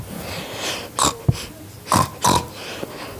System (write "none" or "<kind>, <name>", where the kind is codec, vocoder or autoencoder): none